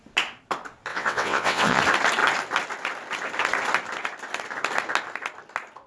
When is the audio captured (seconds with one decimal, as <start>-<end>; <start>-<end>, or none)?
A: 0.0-0.9; 1.8-5.9